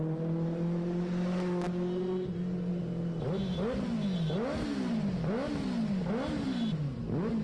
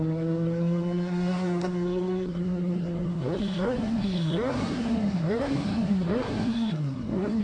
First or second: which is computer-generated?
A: second